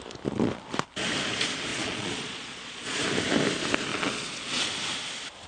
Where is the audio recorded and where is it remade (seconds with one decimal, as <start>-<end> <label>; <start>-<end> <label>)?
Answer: 0.0-1.7 recorded; 1.7-3.0 remade; 3.0-3.9 recorded; 3.9-4.6 remade; 4.6-5.5 recorded